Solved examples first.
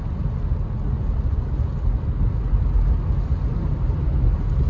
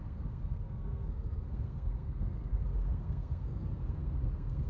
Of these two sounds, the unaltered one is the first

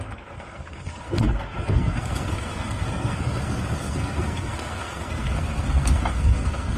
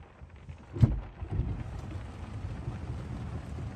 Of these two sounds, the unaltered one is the second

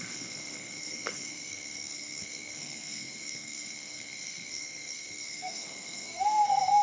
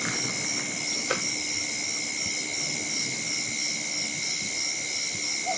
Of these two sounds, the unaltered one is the second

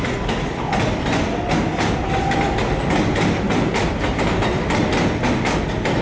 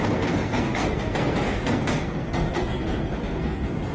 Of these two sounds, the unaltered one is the first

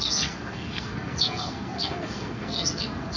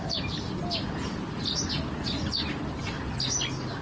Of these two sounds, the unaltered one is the second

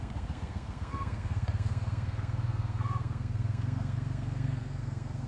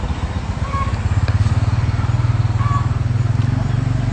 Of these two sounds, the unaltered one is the second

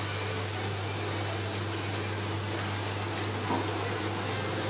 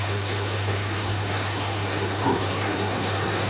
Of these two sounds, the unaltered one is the first